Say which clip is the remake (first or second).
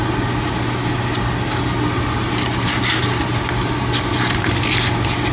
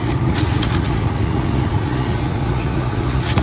second